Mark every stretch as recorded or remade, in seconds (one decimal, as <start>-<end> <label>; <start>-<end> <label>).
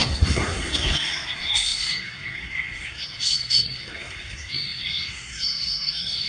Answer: 0.0-6.3 remade